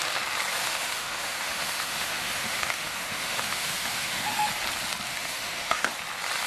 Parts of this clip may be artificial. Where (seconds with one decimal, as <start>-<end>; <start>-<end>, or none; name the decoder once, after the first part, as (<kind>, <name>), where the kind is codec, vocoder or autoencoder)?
0.6-4.5 (autoencoder, DAC-VAE); 5.1-5.9